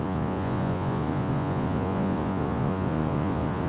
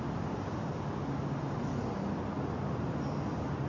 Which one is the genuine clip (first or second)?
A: second